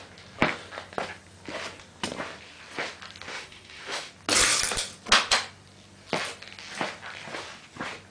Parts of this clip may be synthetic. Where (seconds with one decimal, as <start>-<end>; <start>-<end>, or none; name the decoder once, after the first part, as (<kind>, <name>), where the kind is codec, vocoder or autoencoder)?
3.3-4.1 (autoencoder, DAC-VAE)